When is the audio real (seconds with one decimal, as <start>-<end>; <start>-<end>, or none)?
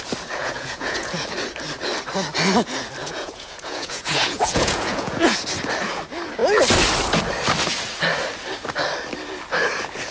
0.0-0.4; 1.1-3.0; 5.4-10.1